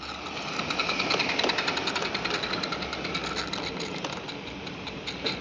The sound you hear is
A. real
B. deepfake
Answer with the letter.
A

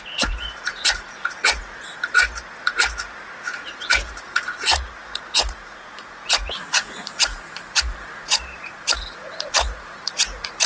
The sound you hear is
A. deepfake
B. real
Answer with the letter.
A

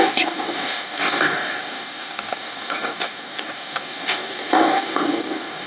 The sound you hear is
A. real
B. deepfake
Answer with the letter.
B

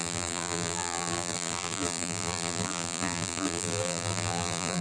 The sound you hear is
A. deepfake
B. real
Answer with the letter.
A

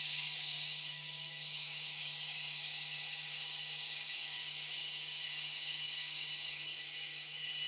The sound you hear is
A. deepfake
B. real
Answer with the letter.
A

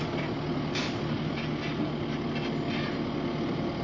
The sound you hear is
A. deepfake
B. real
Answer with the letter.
B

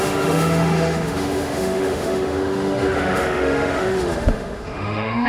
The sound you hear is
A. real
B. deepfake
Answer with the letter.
B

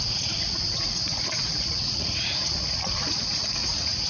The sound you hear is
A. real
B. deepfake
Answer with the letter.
B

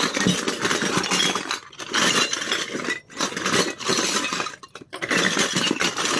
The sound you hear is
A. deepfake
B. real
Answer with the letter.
A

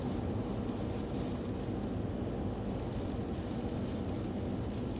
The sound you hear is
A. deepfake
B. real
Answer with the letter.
B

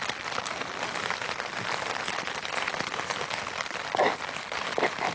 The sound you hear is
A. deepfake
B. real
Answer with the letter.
B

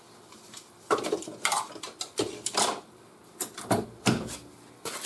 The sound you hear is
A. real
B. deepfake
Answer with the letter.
A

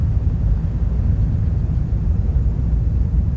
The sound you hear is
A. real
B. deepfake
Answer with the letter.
B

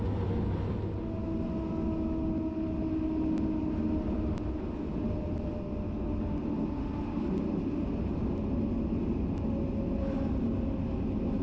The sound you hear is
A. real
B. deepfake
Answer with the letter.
A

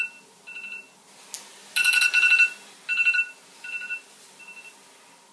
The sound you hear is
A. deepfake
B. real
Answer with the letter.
B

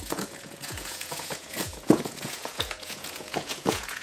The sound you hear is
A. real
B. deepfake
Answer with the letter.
B